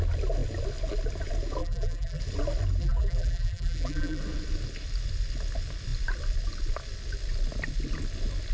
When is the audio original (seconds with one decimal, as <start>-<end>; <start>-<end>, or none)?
0.0-1.6; 2.2-2.8; 4.2-8.5